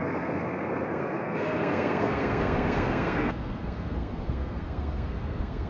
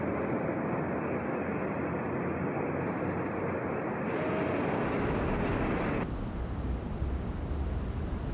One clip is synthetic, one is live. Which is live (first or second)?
second